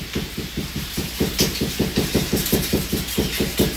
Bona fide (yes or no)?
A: no